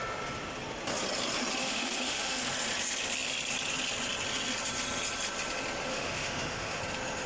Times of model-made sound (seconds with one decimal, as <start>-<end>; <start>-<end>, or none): 1.6-2.4; 5.9-6.8